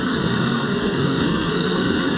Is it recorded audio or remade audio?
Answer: remade